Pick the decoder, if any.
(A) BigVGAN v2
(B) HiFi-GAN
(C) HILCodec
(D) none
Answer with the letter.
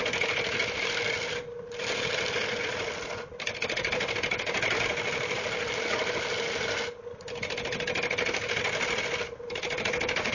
D